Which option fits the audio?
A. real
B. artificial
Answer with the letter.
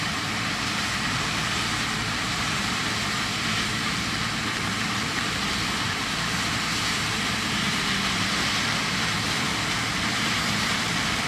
B